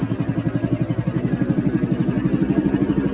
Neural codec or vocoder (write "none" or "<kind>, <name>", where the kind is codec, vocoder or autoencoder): none